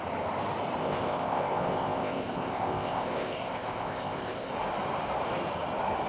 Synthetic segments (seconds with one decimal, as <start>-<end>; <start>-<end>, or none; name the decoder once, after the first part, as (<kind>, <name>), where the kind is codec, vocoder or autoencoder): 0.8-4.5 (codec, ZipCodec)